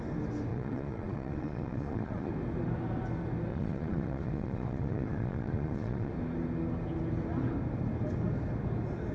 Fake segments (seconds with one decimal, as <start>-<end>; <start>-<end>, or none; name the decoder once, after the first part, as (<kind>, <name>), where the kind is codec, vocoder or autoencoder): 0.5-2.3 (vocoder, Vocos); 3.5-6.1

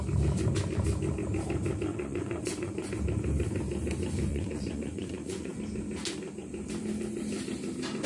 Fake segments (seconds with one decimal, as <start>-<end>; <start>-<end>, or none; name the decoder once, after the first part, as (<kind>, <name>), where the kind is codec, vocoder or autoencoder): 1.9-2.9 (vocoder, Vocos); 4.3-5.6

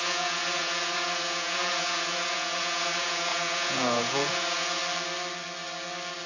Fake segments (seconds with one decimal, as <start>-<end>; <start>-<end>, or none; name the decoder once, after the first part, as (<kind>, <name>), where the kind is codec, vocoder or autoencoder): 0.0-4.8 (vocoder, Vocos)

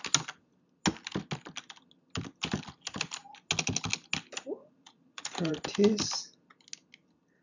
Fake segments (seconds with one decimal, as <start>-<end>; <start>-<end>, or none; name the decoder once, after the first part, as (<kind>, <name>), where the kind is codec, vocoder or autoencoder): 4.6-5.5 (vocoder, Vocos)